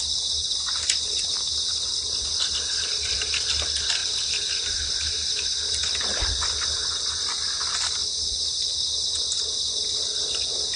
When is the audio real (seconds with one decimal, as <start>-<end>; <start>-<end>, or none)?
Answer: 0.0-10.8